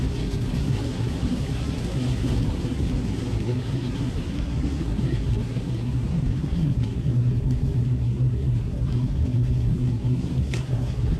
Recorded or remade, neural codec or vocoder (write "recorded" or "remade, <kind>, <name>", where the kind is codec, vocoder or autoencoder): remade, codec, SNAC